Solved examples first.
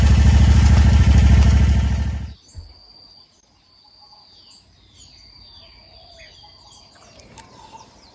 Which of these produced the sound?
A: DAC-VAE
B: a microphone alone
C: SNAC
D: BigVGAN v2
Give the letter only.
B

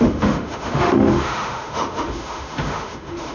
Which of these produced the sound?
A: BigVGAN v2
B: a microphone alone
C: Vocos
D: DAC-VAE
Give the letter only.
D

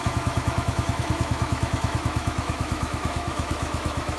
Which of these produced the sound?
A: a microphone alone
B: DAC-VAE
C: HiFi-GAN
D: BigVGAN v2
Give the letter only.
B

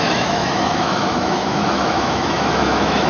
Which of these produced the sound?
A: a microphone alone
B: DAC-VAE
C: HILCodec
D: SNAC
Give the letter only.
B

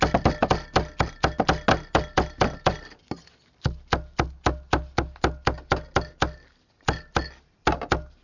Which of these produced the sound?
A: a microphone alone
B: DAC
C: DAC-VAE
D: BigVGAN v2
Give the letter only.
A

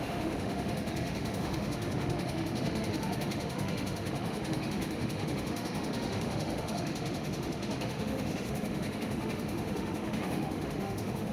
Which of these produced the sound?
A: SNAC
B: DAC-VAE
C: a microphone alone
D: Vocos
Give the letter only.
B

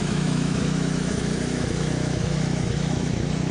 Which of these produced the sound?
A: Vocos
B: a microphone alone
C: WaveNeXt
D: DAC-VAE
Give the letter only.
D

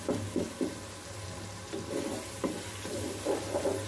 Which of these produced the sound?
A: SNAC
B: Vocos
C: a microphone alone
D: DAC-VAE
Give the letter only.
C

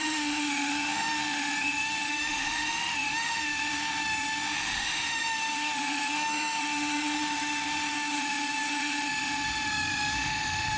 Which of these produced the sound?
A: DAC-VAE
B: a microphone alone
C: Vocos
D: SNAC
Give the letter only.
A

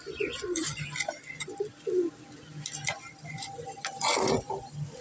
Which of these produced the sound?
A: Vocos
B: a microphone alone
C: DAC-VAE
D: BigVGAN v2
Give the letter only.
B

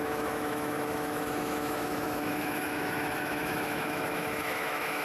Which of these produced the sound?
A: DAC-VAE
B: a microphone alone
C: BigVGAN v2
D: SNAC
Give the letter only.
A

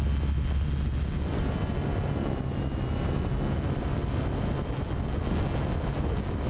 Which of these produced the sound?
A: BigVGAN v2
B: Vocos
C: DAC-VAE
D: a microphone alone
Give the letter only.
D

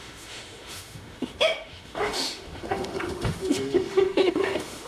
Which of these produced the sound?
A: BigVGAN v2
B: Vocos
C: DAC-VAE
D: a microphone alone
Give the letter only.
C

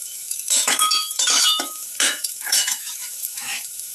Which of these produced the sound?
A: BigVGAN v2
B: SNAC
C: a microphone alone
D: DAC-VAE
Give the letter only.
D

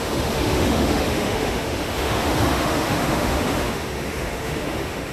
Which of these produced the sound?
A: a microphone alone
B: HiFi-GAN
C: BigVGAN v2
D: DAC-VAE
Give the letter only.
D